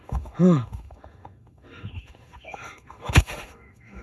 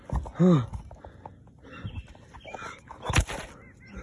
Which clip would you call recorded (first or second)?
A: second